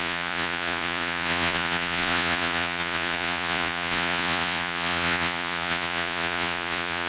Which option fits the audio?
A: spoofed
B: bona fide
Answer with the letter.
A